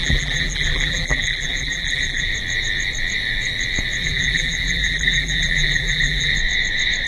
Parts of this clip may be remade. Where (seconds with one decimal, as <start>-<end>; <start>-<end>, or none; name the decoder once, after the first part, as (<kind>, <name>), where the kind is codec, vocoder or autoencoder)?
0.0-2.3 (vocoder, BigVGAN v2); 4.0-6.3